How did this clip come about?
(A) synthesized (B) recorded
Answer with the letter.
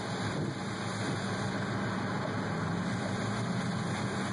B